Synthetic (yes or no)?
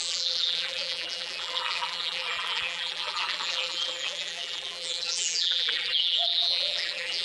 yes